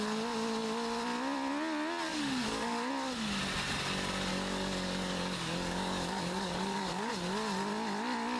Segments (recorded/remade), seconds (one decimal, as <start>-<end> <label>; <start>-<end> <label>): 0.0-2.1 recorded; 2.1-2.9 remade; 2.9-4.3 recorded; 4.3-7.1 remade; 7.1-8.4 recorded